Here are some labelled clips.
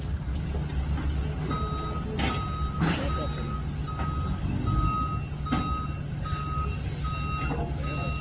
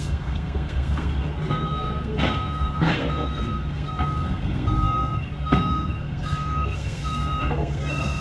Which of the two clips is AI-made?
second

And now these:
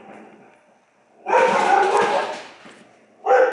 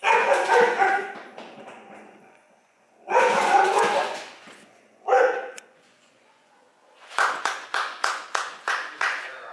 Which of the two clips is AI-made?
second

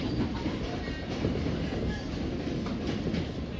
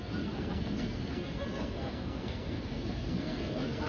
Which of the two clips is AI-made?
second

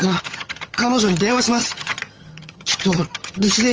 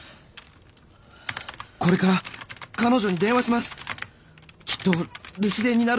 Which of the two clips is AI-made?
first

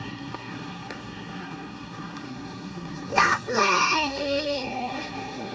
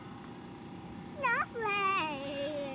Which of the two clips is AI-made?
first